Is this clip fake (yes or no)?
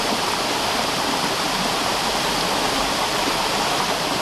no